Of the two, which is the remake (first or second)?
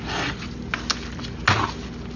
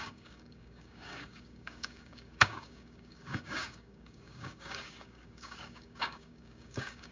second